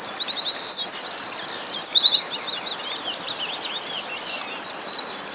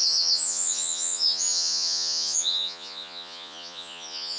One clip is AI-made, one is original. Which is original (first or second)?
first